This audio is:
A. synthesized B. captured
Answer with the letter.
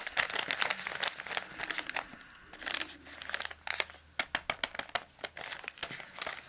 B